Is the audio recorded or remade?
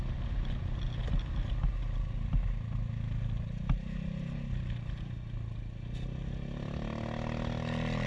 recorded